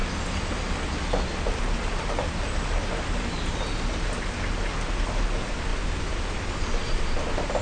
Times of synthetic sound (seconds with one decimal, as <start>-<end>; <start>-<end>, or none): none